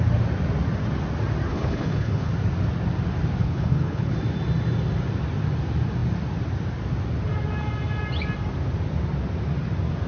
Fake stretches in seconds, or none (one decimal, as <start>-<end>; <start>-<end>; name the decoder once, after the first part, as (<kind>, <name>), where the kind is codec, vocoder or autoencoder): 1.5-2.3 (codec, HILCodec); 3.4-4.1